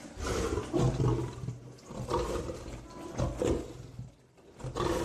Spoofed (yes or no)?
no